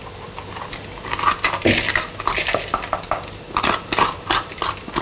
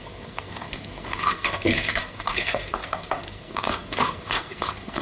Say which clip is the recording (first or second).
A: first